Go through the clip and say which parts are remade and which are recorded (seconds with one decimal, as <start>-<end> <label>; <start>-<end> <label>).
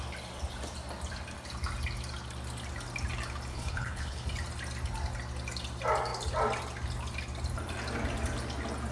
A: 0.0-3.5 recorded; 3.5-4.3 remade; 4.3-8.9 recorded